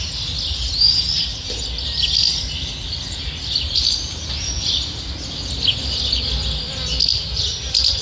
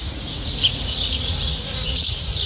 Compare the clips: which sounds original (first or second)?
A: first